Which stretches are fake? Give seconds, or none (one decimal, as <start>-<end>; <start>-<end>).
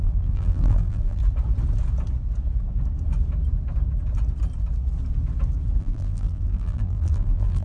0.0-1.2; 5.8-7.6